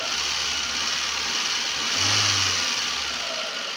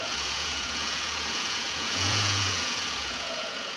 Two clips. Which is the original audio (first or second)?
first